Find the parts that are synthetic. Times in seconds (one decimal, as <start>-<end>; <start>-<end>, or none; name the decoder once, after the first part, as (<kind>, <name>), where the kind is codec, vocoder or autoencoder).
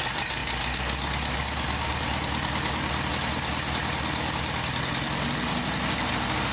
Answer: none